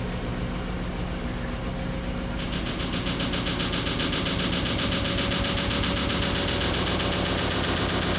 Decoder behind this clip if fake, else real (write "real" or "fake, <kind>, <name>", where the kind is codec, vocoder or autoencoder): real